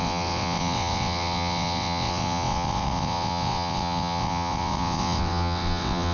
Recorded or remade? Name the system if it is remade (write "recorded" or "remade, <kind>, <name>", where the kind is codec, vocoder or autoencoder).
remade, vocoder, WaveNeXt